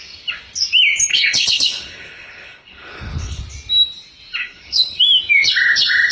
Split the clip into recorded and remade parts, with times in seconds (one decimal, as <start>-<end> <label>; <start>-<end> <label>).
0.0-1.1 recorded; 1.1-3.4 remade; 3.4-4.4 recorded; 4.4-5.0 remade; 5.0-6.1 recorded